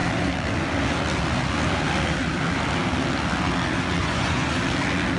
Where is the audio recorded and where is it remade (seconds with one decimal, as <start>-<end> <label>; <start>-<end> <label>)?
0.0-4.0 recorded; 4.0-4.6 remade; 4.6-5.2 recorded